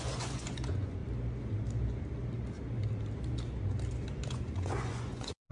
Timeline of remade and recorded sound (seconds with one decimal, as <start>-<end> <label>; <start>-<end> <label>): 0.0-1.0 remade; 1.0-4.3 recorded; 4.3-5.5 remade